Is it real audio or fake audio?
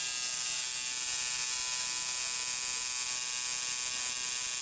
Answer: real